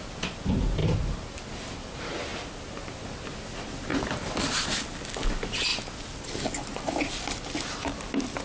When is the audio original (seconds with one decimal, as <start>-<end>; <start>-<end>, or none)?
0.0-8.4